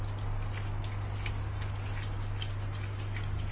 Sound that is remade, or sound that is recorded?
recorded